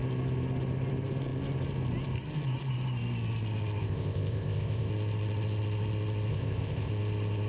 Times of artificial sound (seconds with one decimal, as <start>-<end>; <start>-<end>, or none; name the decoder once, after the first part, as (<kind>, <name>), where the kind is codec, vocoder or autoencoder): 3.8-4.9 (codec, ZipCodec); 6.3-6.9